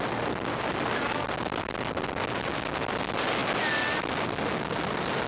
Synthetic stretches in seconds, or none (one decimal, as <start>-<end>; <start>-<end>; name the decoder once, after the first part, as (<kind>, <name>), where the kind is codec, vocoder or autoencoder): none